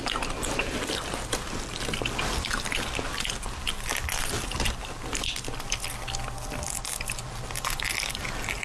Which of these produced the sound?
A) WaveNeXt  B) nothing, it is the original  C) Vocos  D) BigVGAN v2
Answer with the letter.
B